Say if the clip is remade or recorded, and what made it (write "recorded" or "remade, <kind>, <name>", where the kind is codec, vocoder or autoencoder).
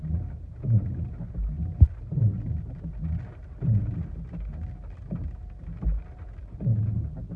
recorded